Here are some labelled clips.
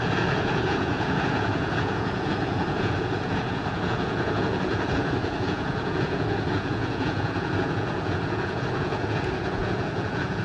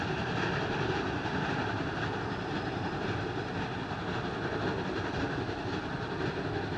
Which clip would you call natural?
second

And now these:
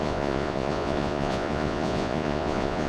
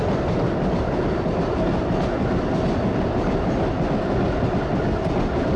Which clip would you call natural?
second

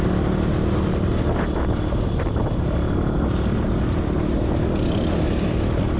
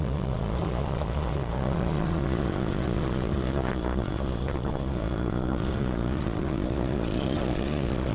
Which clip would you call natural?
first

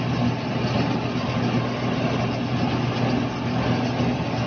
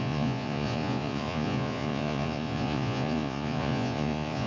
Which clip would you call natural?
first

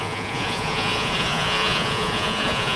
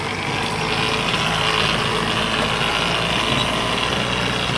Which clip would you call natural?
second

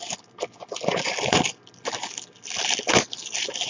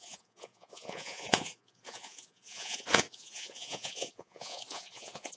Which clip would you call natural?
first